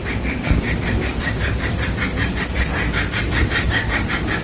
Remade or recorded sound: remade